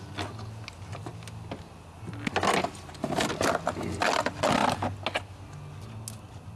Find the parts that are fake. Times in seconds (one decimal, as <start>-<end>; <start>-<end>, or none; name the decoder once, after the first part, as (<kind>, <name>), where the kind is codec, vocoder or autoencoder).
none